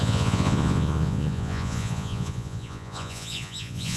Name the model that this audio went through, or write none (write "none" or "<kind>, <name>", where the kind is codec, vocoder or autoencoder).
vocoder, Vocos